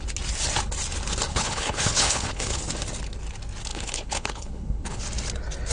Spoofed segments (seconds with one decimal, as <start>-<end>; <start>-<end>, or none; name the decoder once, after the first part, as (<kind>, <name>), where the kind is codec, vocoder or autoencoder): 1.3-2.6 (codec, HILCodec); 3.7-5.0